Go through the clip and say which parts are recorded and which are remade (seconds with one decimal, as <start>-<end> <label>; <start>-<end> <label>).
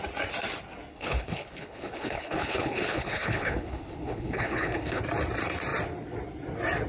0.0-0.9 recorded; 0.9-5.0 remade; 5.0-6.9 recorded